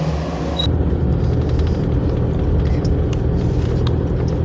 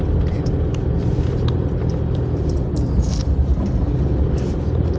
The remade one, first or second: second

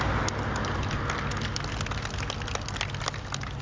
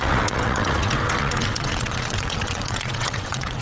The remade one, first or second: second